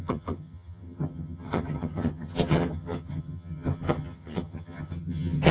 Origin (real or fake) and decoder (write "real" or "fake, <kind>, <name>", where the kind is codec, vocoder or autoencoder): fake, vocoder, HiFi-GAN